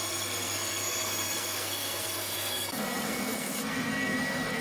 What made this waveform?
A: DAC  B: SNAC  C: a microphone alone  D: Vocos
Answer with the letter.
B